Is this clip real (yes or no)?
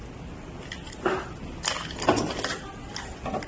yes